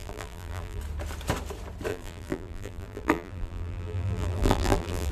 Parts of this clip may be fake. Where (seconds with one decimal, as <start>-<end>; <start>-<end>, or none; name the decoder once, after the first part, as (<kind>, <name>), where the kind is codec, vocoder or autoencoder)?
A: 0.0-0.8 (vocoder, BigVGAN v2); 1.9-5.1